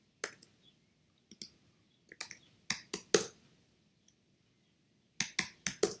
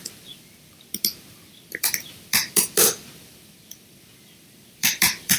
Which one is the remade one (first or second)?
second